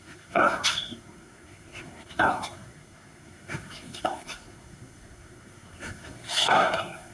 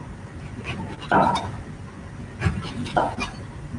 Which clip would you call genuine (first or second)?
second